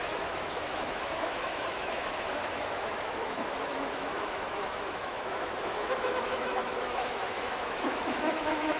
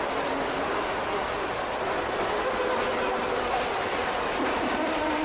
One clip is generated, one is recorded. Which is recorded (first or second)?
second